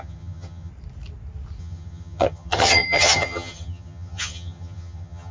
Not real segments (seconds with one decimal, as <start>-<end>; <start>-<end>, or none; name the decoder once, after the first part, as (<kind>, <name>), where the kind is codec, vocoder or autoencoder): 0.0-0.7 (vocoder, HiFi-GAN); 1.6-5.3